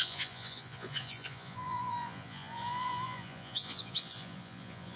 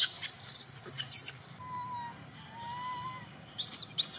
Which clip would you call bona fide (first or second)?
second